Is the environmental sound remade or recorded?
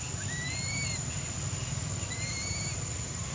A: recorded